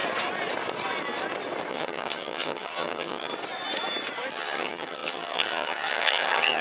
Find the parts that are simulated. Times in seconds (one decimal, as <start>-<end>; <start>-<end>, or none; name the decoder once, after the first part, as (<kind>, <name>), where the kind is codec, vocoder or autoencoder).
1.7-3.3 (vocoder, HiFi-GAN); 4.3-6.6